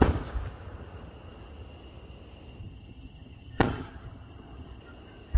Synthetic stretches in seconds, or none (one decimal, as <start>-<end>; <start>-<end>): 2.6-4.8